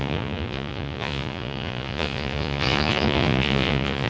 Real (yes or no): no